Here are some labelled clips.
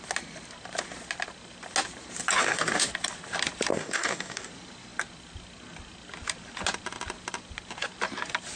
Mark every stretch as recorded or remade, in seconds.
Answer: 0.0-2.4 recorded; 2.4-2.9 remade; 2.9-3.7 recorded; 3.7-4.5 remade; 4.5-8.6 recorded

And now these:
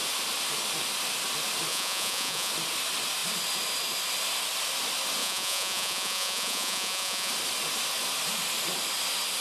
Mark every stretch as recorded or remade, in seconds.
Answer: 0.0-1.7 recorded; 1.7-2.5 remade; 2.5-5.2 recorded; 5.2-7.3 remade; 7.3-9.4 recorded